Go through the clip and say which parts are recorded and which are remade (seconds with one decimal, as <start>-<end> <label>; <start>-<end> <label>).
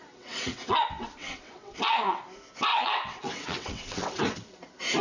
0.0-2.2 remade; 2.2-2.7 recorded; 2.7-4.2 remade; 4.2-5.0 recorded